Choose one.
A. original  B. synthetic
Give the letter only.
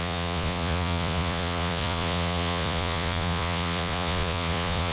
B